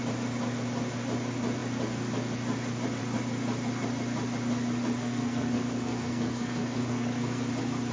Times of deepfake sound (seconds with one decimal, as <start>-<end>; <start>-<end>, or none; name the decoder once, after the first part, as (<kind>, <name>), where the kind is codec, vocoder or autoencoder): 5.0-7.5 (codec, SNAC)